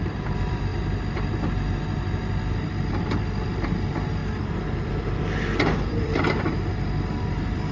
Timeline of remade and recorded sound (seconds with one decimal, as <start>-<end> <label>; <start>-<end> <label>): 0.0-0.7 remade; 0.7-2.9 recorded; 2.9-4.2 remade; 4.2-4.9 recorded; 4.9-7.7 remade